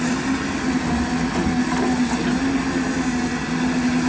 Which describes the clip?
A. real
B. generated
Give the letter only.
A